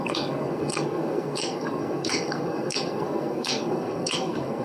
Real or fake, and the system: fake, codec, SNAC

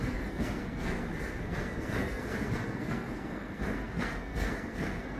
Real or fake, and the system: fake, codec, SNAC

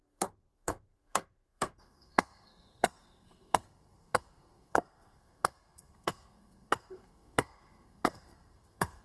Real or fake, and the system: fake, codec, SNAC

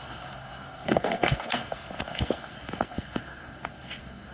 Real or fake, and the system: fake, codec, SNAC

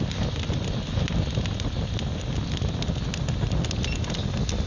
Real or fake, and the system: real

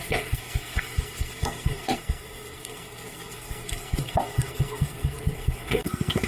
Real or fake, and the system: fake, codec, SNAC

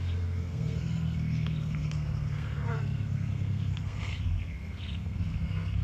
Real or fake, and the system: fake, codec, SNAC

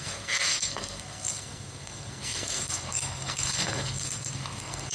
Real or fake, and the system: fake, codec, SNAC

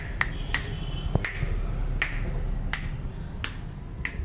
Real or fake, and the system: real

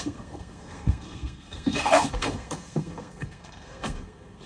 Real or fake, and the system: fake, codec, SNAC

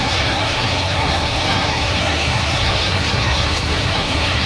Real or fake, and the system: fake, codec, SNAC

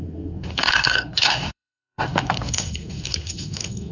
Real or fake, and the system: fake, codec, SNAC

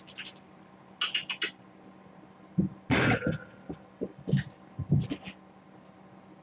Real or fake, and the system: real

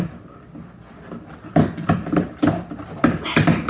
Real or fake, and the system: real